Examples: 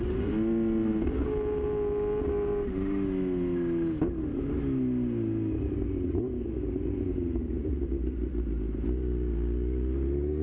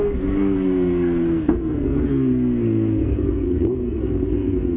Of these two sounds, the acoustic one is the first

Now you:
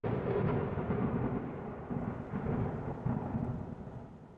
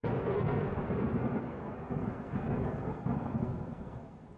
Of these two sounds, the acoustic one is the first